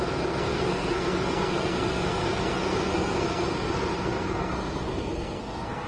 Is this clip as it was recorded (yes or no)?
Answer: no